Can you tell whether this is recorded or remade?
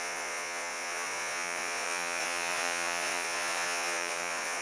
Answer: remade